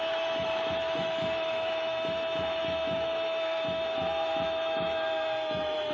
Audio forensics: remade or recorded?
remade